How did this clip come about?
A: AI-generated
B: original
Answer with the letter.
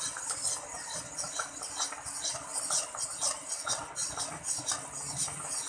B